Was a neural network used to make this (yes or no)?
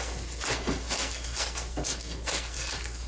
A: yes